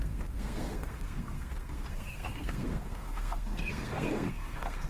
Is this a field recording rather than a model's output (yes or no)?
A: no